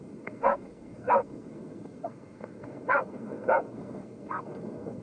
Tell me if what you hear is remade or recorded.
remade